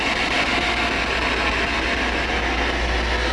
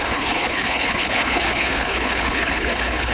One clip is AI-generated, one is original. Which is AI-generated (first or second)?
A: second